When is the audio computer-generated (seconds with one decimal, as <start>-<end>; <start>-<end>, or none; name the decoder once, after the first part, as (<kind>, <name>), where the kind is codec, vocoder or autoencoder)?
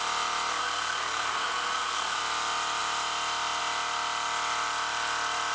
0.6-2.2 (codec, SNAC)